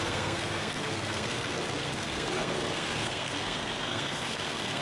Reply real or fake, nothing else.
fake